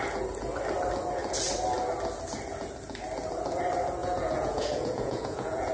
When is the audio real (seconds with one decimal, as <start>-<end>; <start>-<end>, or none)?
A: 0.0-4.0